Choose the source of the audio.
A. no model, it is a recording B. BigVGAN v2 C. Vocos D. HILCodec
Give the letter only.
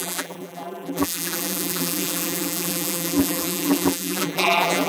B